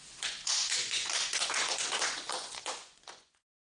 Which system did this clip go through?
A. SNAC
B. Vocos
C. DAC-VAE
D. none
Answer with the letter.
B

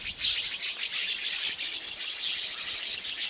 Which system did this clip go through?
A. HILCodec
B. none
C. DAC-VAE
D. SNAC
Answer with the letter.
B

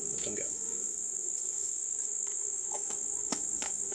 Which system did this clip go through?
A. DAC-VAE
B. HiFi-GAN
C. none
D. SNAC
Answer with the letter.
A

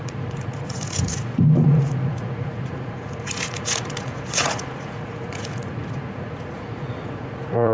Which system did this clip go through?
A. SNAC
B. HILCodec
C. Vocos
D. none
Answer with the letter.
C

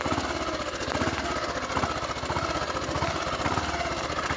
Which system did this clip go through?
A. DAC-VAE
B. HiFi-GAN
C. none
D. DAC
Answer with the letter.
C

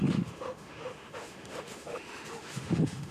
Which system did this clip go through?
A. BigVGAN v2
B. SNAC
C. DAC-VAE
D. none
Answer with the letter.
C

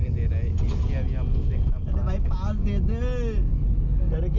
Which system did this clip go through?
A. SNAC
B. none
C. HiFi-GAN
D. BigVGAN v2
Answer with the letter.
B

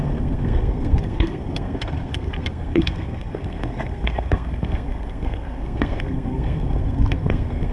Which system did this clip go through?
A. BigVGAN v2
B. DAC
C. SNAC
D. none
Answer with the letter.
C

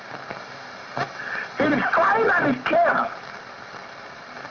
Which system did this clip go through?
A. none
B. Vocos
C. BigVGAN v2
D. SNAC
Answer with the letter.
C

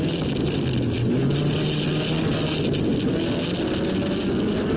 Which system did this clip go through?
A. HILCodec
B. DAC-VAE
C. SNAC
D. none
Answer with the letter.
D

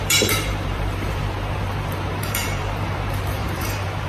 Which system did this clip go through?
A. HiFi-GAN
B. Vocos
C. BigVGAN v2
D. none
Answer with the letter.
C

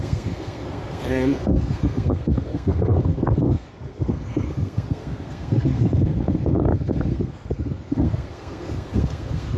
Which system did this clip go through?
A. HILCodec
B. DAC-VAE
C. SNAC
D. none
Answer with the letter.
C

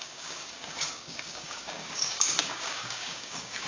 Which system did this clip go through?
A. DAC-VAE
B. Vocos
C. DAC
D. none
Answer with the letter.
C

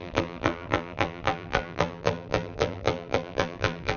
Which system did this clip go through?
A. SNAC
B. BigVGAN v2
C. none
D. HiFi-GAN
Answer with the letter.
B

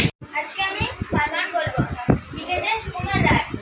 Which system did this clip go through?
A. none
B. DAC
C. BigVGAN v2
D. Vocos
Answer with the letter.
A